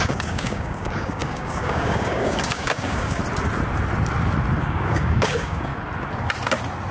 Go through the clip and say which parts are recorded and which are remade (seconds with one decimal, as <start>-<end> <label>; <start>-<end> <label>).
0.0-3.2 remade; 3.2-4.6 recorded; 4.6-5.7 remade; 5.7-6.9 recorded